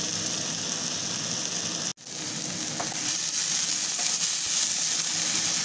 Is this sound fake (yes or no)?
no